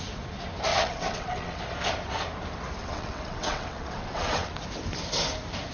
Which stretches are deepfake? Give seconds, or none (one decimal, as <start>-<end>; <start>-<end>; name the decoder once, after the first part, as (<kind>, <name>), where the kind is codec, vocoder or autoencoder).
0.7-1.6 (vocoder, WaveNeXt); 2.8-4.5